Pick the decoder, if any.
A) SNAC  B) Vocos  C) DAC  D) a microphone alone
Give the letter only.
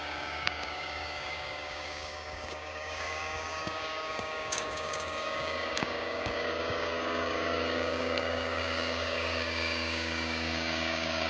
C